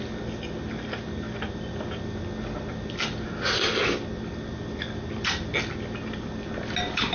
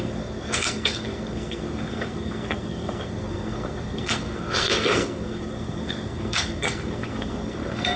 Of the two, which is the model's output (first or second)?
second